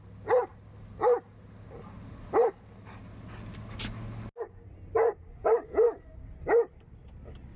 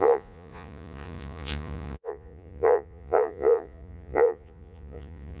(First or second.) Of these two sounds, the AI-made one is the second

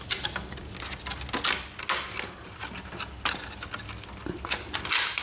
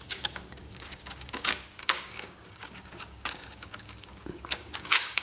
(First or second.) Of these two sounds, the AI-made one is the second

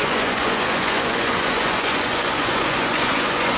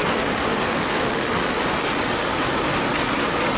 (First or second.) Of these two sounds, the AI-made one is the first